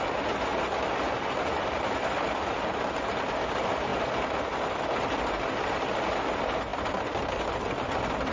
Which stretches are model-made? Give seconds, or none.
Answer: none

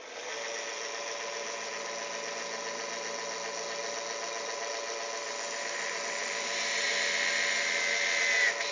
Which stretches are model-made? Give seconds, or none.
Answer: none

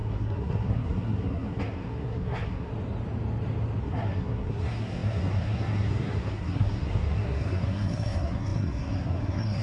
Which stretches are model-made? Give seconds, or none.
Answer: 0.0-2.7 (codec, SNAC); 3.8-9.6

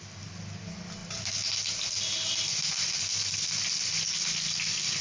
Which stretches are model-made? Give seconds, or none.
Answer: none